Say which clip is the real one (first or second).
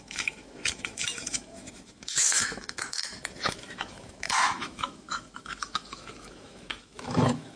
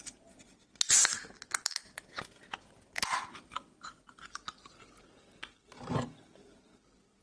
second